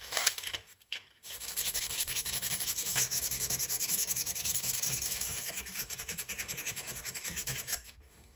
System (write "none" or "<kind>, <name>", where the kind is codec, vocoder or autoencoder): codec, DAC